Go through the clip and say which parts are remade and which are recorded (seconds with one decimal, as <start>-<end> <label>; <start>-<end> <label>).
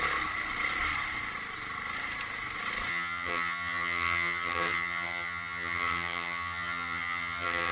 0.0-2.9 recorded; 2.9-7.7 remade